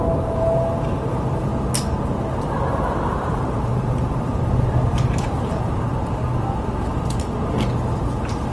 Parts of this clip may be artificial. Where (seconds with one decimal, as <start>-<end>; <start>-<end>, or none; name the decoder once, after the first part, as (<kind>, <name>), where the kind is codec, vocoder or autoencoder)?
0.0-1.5 (vocoder, BigVGAN v2); 2.1-4.3; 4.9-5.9; 8.0-8.5